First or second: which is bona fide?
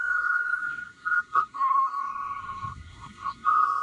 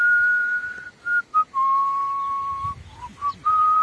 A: second